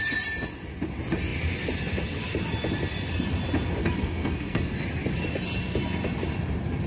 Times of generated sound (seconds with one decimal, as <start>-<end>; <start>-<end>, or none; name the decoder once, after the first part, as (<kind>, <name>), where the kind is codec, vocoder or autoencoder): 3.8-4.6 (codec, SNAC)